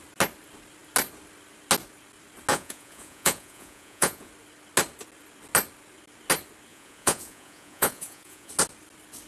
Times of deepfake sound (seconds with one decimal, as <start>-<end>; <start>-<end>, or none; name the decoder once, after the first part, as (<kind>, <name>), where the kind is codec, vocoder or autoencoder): 2.5-4.3 (vocoder, Vocos); 6.7-8.5